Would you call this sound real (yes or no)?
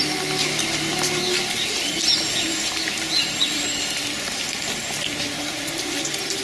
yes